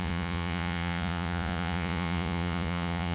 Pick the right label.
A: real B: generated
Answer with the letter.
B